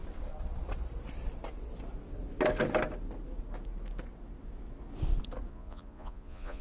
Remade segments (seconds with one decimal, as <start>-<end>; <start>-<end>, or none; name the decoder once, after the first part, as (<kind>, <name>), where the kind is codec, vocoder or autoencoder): 5.5-6.6 (vocoder, Vocos)